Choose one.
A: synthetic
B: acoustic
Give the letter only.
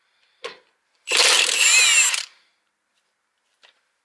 B